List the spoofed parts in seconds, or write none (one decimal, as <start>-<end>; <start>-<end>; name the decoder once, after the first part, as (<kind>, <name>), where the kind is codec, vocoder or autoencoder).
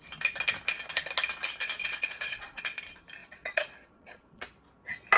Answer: 1.8-2.6 (vocoder, Vocos); 3.2-4.4